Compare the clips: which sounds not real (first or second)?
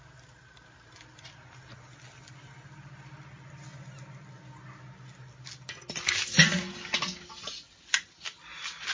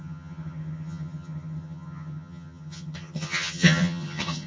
second